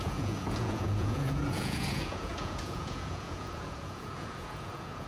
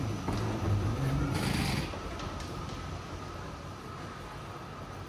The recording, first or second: second